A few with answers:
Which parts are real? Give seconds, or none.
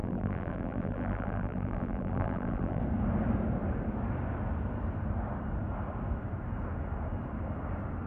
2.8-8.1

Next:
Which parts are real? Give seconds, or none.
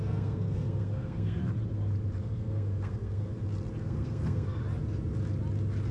1.4-2.2; 3.3-3.8; 4.6-5.9